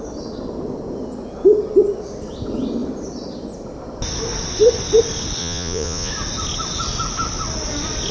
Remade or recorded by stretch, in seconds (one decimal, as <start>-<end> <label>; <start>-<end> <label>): 0.0-5.4 recorded; 5.4-6.1 remade; 6.1-8.1 recorded